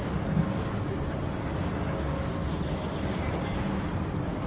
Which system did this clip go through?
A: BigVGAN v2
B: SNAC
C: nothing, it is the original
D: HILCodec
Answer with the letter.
C